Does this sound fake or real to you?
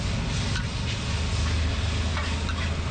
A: real